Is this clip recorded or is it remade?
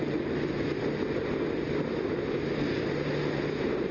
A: recorded